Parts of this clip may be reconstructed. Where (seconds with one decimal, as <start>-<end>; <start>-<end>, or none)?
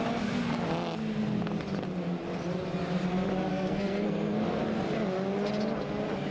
3.5-4.6